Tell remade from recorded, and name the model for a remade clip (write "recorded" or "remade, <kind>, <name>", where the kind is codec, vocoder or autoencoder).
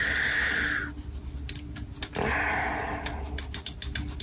recorded